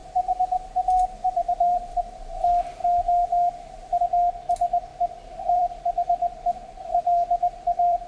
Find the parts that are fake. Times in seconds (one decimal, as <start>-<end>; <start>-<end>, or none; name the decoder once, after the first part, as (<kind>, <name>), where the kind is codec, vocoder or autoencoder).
0.0-2.0 (vocoder, BigVGAN v2); 4.9-8.1